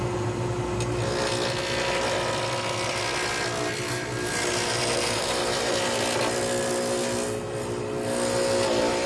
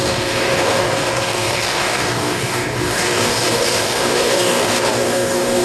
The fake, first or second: second